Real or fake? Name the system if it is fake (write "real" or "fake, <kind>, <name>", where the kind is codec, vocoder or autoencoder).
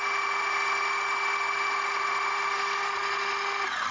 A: real